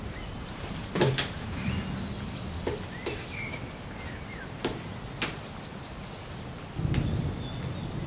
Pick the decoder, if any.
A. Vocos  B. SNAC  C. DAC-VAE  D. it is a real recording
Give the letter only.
D